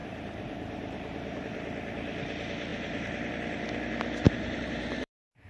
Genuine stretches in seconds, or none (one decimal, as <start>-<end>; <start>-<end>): 1.4-2.7; 3.3-4.2; 5.1-5.5